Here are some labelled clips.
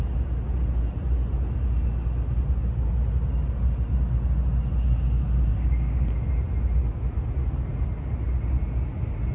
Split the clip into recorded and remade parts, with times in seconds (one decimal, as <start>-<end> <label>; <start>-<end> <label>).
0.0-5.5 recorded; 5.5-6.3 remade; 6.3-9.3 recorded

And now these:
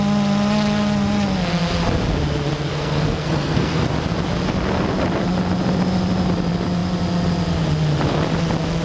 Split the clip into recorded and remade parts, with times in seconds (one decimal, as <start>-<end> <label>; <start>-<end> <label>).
0.0-2.7 recorded; 2.7-3.9 remade; 3.9-8.8 recorded

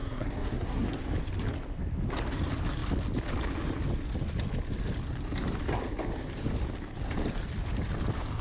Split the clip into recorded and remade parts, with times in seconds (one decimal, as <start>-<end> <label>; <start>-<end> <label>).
0.0-1.0 remade; 1.0-8.4 recorded